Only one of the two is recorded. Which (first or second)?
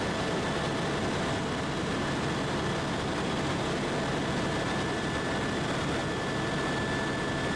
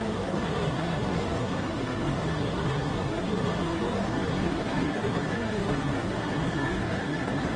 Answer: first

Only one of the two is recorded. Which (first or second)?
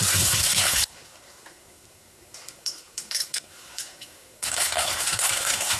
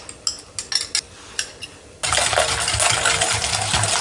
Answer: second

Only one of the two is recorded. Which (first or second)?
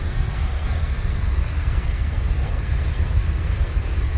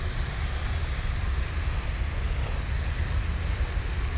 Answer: second